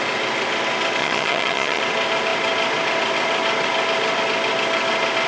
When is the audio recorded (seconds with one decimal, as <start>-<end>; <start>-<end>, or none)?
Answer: 0.0-1.0; 1.8-5.3